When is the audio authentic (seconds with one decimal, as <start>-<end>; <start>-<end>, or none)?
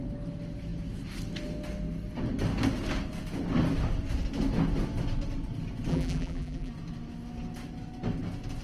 0.0-5.9; 6.7-8.6